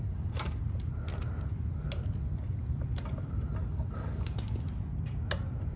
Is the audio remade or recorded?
recorded